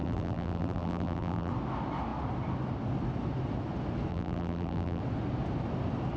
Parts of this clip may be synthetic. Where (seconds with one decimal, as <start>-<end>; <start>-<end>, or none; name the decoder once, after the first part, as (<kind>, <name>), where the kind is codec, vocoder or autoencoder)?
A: 0.0-1.5 (vocoder, BigVGAN v2); 4.1-5.0